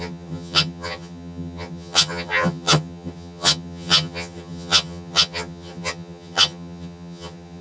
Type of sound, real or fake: fake